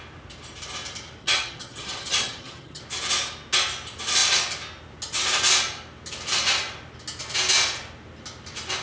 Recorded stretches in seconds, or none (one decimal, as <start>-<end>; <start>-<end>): 0.0-1.2; 2.8-8.8